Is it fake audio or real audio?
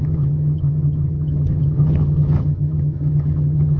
fake